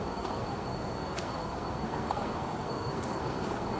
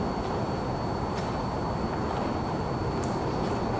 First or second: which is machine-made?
first